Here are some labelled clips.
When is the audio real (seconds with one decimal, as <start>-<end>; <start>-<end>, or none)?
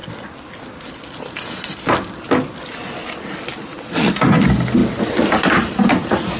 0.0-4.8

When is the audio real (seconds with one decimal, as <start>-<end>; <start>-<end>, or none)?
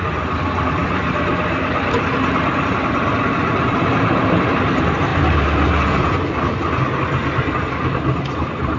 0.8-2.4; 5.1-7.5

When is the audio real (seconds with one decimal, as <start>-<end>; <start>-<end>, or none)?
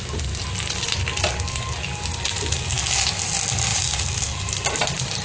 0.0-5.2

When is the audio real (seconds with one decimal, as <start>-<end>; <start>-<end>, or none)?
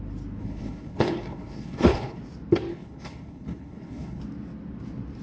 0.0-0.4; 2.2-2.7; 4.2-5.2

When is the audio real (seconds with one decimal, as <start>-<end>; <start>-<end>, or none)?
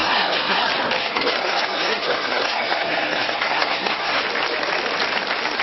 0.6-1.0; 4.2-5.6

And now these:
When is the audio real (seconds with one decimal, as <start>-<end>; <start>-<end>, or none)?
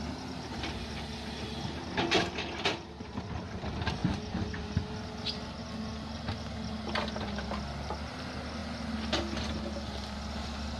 0.0-10.8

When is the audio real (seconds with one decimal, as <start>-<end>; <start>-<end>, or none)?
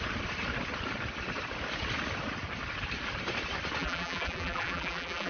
0.0-3.8